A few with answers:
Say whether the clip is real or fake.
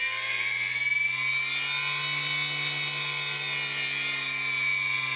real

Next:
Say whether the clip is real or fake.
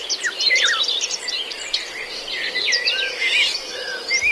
real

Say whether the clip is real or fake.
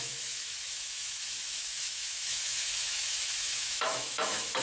fake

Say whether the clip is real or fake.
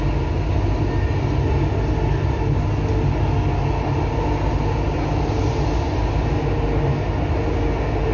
real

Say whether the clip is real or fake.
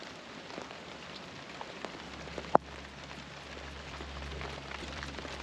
fake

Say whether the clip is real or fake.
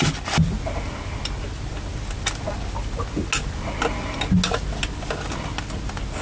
real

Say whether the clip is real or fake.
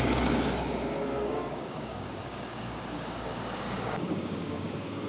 fake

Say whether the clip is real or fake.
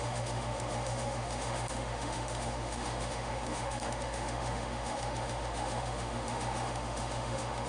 fake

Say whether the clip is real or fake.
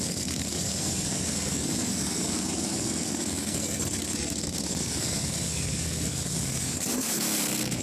fake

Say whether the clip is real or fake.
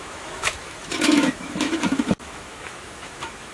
fake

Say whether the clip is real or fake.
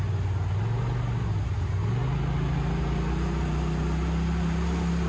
real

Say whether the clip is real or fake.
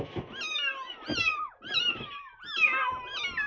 real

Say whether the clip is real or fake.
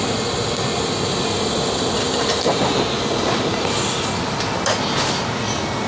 fake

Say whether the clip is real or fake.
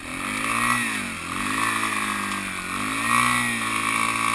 real